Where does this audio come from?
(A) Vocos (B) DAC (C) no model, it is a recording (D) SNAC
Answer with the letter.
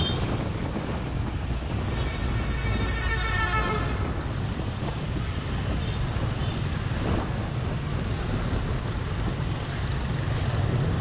C